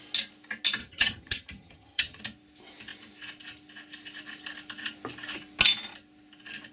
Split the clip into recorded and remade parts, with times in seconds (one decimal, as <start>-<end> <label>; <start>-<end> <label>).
0.0-0.8 recorded; 0.8-2.2 remade; 2.2-6.7 recorded